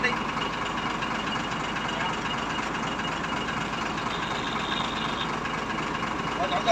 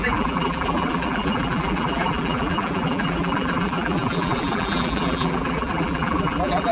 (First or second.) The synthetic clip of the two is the second